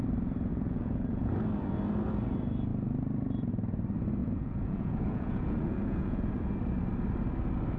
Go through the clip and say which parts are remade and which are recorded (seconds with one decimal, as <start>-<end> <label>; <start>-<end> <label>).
0.0-0.5 recorded; 0.5-1.3 remade; 1.3-4.2 recorded; 4.2-6.3 remade; 6.3-7.8 recorded